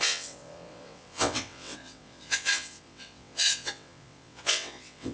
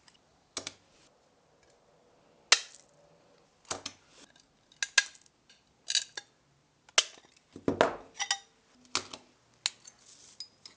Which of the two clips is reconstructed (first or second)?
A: first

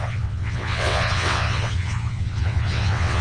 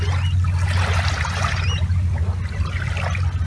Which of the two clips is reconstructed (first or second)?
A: first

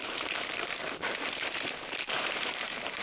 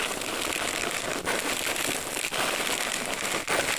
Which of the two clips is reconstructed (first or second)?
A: first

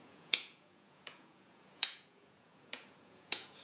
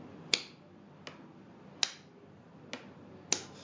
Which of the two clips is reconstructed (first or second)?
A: first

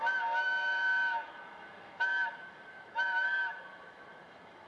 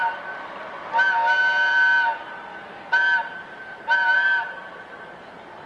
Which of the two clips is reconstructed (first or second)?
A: first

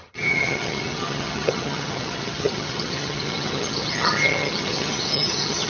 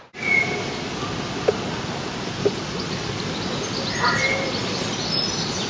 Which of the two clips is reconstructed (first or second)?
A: first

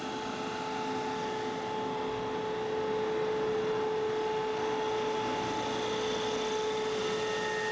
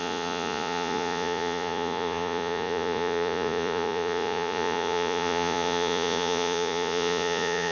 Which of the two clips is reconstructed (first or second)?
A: second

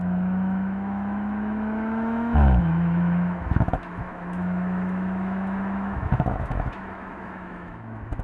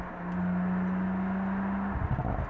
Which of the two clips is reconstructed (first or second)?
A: first